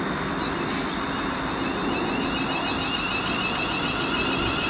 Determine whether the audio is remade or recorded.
recorded